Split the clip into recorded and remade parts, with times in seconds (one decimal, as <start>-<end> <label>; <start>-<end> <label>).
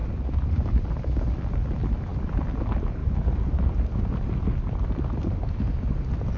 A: 0.0-0.9 remade; 0.9-2.1 recorded; 2.1-2.6 remade; 2.6-3.0 recorded; 3.0-4.1 remade; 4.1-6.4 recorded